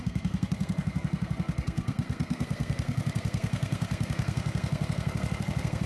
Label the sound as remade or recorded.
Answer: remade